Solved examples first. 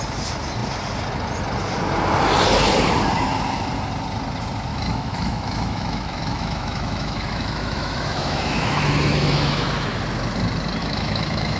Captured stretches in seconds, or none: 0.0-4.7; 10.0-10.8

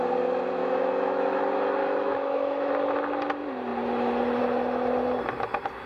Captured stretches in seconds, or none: 0.0-0.6; 1.4-1.8; 2.7-5.9

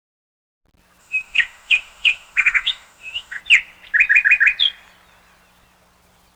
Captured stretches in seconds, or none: 0.0-1.0; 3.4-6.4

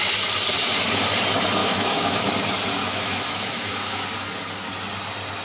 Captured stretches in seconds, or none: 0.0-1.6; 2.3-2.8; 4.0-5.4

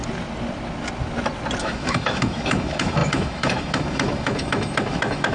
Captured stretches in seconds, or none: 0.0-1.6